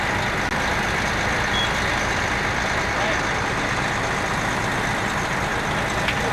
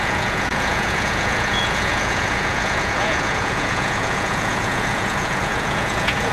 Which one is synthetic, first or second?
second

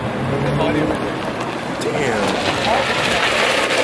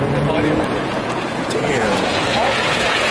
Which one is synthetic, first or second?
second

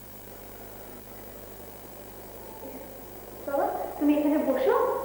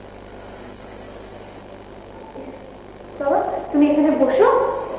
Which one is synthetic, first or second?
first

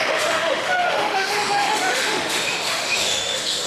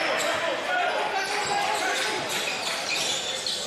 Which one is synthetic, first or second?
first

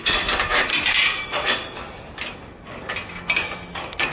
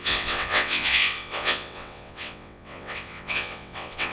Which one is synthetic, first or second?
second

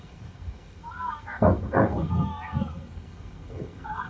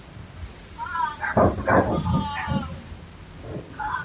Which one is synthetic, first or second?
first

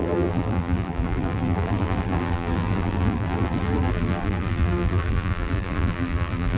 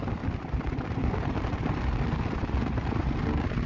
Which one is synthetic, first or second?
first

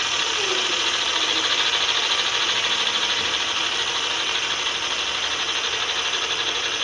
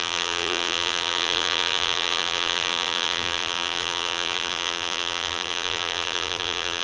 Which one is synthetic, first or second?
second